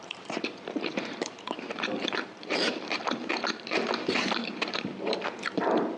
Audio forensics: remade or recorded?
remade